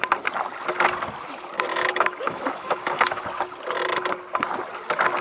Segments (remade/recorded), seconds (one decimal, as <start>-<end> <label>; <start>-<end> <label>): 0.0-1.7 recorded; 1.7-3.2 remade; 3.2-5.2 recorded